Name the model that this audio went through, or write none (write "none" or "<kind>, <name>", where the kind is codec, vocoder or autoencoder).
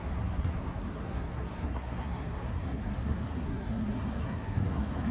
codec, SNAC